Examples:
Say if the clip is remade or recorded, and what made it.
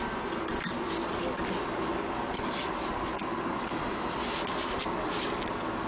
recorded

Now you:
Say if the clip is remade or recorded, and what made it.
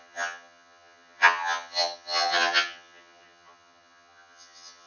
remade, vocoder, HiFi-GAN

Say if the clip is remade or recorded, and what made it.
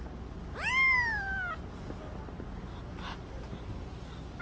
recorded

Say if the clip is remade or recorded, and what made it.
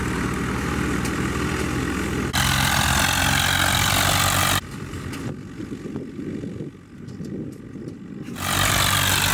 recorded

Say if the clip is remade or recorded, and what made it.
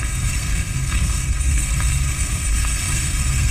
remade, codec, SNAC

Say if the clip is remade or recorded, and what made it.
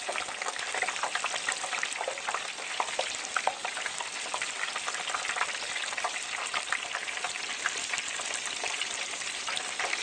recorded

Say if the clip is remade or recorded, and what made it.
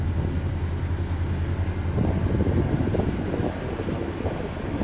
recorded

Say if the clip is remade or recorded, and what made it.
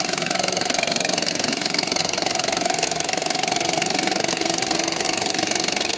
remade, codec, SNAC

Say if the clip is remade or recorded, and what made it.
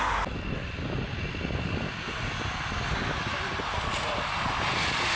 recorded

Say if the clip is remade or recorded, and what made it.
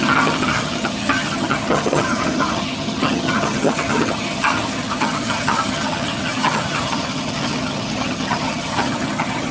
remade, vocoder, HiFi-GAN